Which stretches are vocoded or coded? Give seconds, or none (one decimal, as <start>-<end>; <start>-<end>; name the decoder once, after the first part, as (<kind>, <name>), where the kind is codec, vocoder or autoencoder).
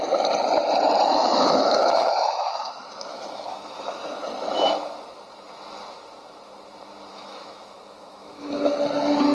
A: 1.1-4.2 (autoencoder, DAC-VAE); 7.1-8.8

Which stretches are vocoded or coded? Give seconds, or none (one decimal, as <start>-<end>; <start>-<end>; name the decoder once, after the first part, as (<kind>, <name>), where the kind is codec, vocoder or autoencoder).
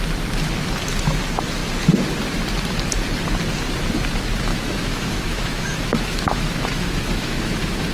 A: 4.5-7.9 (autoencoder, DAC-VAE)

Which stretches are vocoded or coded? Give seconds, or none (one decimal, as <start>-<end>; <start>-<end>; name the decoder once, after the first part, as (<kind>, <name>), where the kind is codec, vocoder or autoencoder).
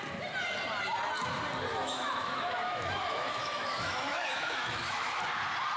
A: 1.7-5.2 (autoencoder, DAC-VAE)